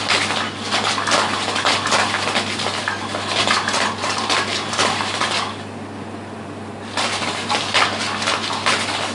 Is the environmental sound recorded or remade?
recorded